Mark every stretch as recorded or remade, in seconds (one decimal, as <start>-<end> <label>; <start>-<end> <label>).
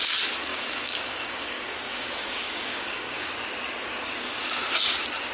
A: 0.0-0.5 recorded; 0.5-3.3 remade; 3.3-5.3 recorded